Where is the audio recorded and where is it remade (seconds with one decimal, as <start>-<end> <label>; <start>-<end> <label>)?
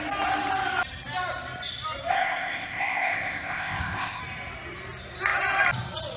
0.0-2.1 recorded; 2.1-4.2 remade; 4.2-6.2 recorded